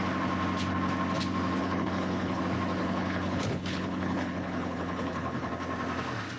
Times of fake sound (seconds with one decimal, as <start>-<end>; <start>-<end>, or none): 1.6-2.4; 2.8-5.5